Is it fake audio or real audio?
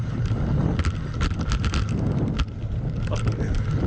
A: real